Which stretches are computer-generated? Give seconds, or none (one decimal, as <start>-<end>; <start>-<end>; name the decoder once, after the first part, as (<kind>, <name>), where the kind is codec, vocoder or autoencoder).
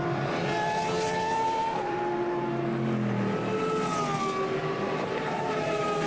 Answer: 1.3-2.0 (vocoder, BigVGAN v2); 4.6-6.1